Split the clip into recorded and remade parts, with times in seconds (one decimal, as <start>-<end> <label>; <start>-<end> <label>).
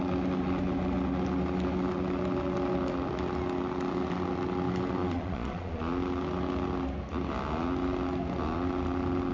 0.0-5.0 recorded; 5.0-5.8 remade; 5.8-9.3 recorded